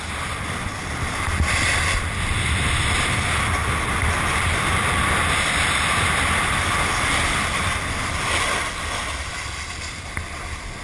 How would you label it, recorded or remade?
recorded